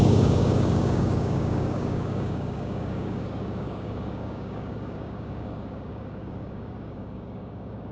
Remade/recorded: remade